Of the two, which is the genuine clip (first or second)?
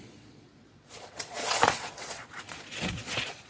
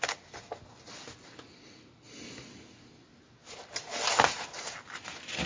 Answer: second